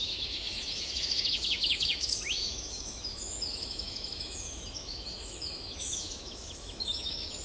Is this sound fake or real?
fake